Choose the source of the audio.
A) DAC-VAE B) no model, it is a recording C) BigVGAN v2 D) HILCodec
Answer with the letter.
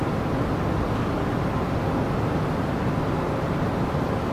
B